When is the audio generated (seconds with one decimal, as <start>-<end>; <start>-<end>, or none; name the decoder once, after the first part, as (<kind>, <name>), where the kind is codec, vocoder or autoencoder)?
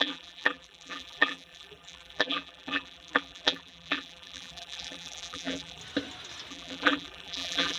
0.0-5.8 (vocoder, BigVGAN v2); 6.5-7.8